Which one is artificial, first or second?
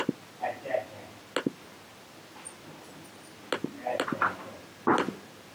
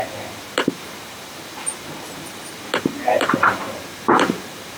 second